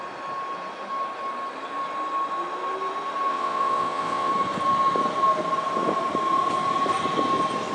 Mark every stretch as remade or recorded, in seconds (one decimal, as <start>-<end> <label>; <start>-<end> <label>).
0.0-3.3 recorded; 3.3-4.3 remade; 4.3-7.7 recorded

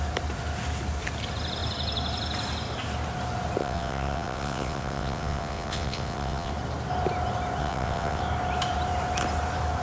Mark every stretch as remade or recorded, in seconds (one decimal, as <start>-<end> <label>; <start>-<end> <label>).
0.0-3.6 recorded; 3.6-6.5 remade; 6.5-7.6 recorded; 7.6-8.2 remade; 8.2-9.8 recorded

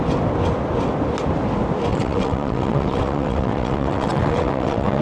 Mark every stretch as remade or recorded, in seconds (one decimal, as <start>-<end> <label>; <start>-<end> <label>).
0.0-1.9 recorded; 1.9-5.0 remade

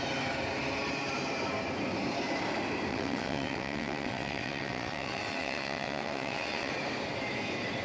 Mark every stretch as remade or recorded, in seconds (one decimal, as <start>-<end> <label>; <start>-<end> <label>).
0.0-2.9 recorded; 2.9-6.7 remade; 6.7-7.8 recorded

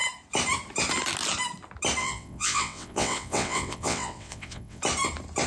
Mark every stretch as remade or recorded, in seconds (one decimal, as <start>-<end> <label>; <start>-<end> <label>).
0.0-2.0 recorded; 2.0-4.8 remade; 4.8-5.5 recorded